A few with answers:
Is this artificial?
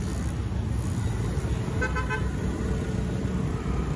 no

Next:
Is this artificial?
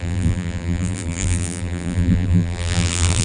yes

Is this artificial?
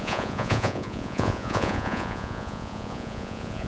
yes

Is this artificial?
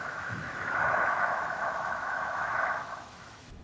yes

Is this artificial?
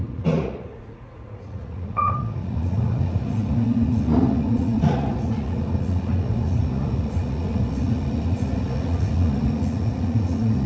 yes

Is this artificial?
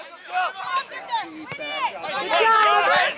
no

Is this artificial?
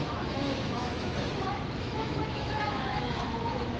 yes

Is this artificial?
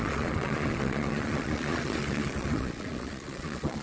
yes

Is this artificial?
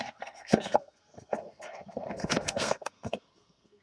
yes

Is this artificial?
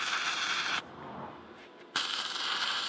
no